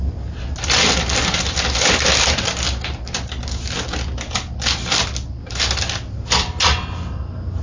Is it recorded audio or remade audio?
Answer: recorded